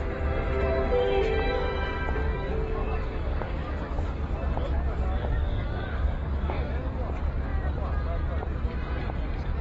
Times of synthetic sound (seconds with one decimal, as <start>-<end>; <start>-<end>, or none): 2.2-4.2; 5.2-6.9